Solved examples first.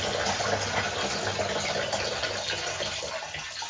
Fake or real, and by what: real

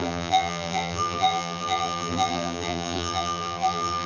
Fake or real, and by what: fake, vocoder, BigVGAN v2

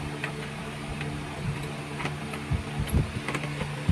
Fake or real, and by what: real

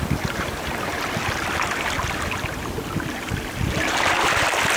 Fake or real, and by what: fake, vocoder, BigVGAN v2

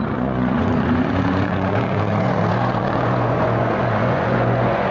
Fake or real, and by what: fake, vocoder, Vocos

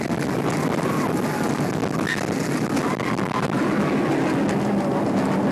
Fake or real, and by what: real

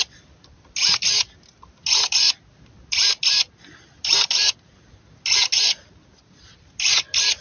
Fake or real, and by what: real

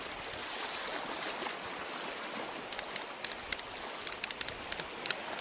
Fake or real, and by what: real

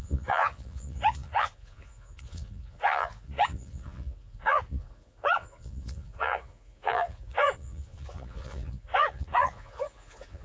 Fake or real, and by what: fake, vocoder, Vocos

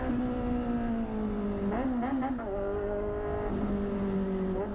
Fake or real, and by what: real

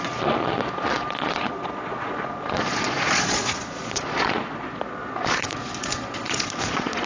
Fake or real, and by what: fake, vocoder, Vocos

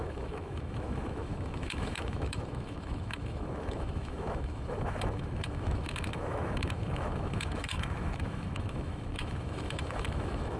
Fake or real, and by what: fake, autoencoder, DAC-VAE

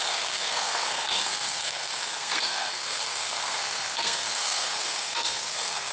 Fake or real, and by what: fake, codec, SNAC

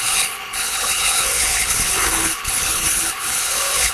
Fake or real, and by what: fake, codec, HILCodec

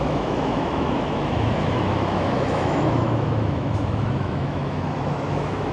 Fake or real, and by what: fake, autoencoder, DAC-VAE